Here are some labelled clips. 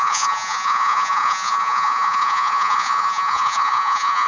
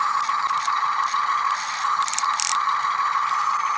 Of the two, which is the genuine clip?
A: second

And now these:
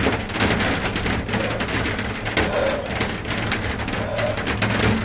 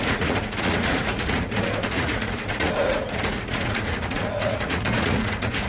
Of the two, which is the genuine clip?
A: first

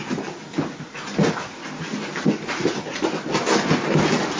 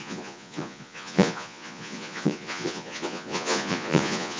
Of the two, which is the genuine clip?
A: first